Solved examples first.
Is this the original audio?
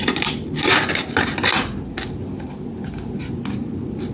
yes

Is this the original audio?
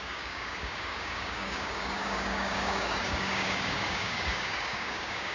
no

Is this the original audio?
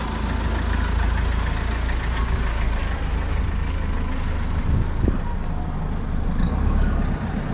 yes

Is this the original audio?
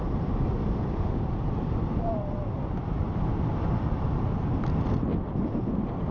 yes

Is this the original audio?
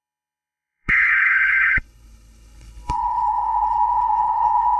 no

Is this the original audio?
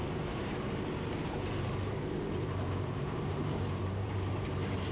no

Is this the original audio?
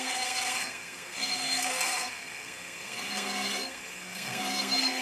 no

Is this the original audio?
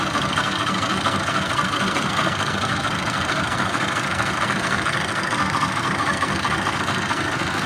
no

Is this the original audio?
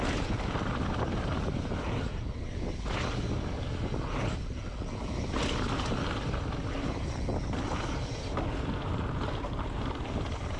yes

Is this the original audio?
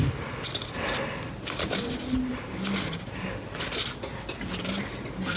yes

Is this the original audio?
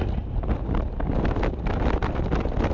yes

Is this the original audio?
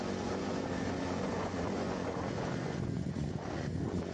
no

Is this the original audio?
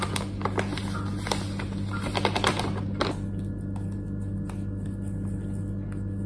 yes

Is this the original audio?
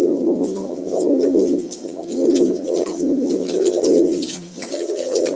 no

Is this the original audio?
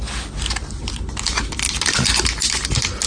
yes